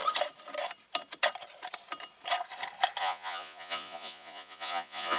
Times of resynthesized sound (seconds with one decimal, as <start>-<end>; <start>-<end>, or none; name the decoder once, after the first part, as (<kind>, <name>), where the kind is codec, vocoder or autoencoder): 3.0-5.2 (vocoder, Vocos)